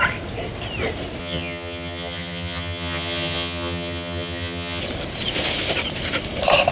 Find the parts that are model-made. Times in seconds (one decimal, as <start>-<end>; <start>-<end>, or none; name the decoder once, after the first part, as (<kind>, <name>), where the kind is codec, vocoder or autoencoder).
1.2-4.8 (vocoder, HiFi-GAN)